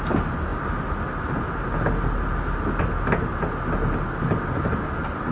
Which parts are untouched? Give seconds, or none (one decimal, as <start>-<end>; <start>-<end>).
0.0-5.3